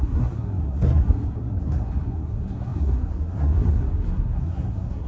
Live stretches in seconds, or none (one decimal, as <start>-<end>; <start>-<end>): none